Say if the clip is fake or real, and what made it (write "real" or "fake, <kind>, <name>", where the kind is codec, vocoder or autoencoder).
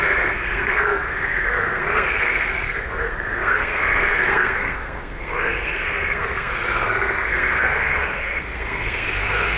fake, codec, SNAC